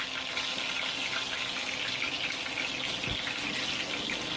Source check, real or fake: real